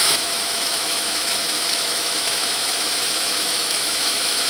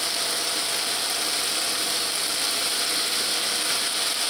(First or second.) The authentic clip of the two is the second